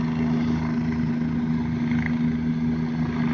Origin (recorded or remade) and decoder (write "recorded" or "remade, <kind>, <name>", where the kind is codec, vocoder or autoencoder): recorded